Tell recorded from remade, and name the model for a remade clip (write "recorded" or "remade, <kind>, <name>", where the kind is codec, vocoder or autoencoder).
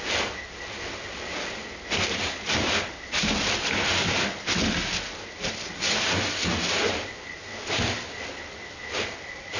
recorded